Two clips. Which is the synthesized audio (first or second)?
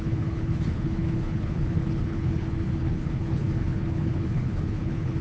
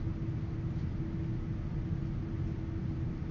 first